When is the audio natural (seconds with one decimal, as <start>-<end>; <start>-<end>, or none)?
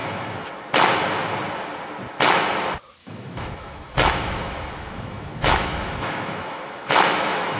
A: 0.5-3.0